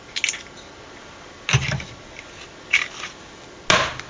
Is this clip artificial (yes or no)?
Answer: no